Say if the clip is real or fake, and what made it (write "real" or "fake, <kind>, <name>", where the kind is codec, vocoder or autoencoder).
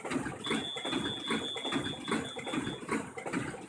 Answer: real